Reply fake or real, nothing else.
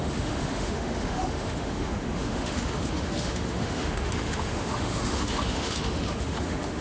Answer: fake